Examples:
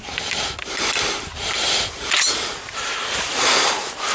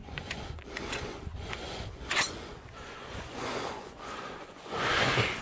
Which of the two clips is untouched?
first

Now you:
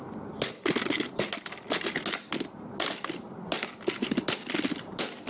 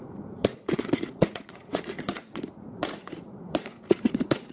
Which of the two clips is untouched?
first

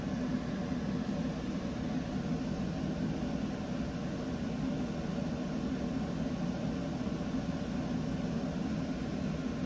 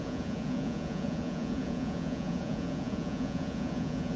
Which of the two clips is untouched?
first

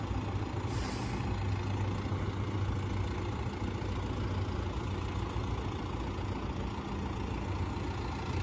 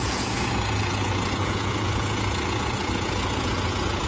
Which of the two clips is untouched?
first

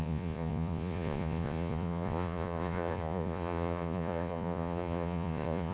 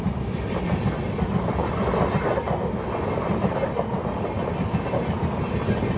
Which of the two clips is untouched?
second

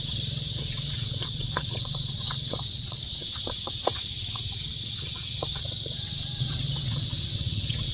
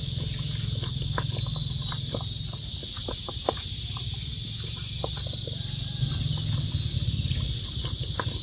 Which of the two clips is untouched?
second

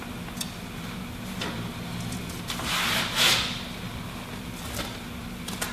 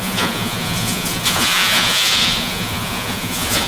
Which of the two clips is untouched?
first